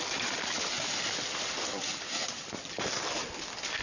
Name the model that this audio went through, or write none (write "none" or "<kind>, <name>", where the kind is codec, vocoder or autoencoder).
none